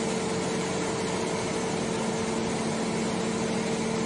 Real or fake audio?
real